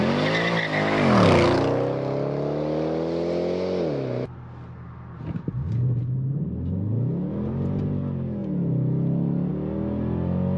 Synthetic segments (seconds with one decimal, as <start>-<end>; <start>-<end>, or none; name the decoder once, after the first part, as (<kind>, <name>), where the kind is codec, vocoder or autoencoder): none